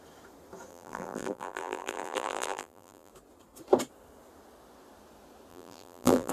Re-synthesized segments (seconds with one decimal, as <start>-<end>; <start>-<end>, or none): 0.7-3.1; 5.5-6.3